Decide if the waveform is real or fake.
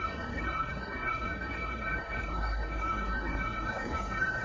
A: fake